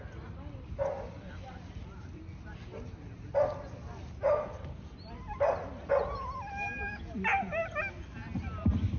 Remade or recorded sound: recorded